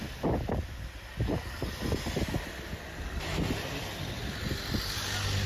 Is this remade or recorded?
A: recorded